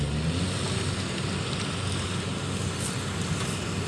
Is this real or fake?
real